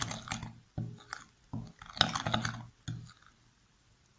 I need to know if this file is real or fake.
real